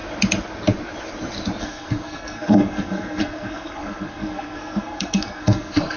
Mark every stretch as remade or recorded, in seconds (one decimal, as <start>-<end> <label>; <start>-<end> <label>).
0.0-1.6 recorded; 1.6-6.0 remade